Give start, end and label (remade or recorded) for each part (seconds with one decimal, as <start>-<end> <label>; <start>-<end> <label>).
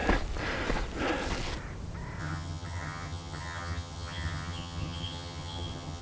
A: 0.0-2.2 recorded; 2.2-6.0 remade